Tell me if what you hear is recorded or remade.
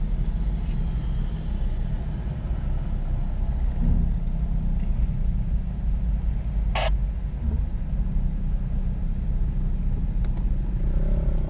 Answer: recorded